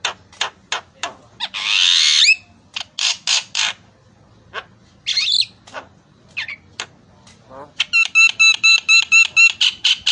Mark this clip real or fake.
real